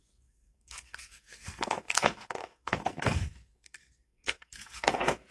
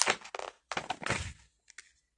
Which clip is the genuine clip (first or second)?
second